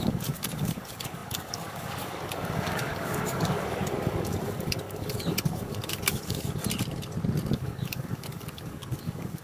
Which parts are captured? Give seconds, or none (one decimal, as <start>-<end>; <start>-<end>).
6.6-7.5